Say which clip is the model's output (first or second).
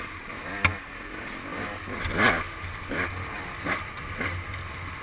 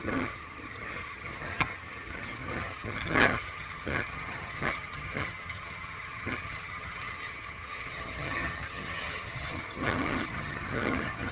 second